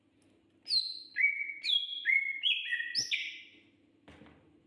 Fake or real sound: real